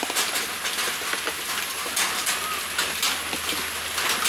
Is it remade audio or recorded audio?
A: recorded